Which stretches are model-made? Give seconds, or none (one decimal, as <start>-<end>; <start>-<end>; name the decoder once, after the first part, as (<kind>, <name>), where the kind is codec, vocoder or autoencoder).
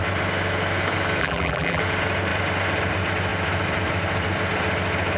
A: 1.2-1.8 (vocoder, BigVGAN v2)